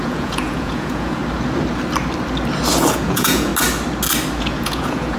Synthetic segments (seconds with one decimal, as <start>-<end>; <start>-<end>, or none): 0.0-1.2; 2.9-3.5; 4.4-5.2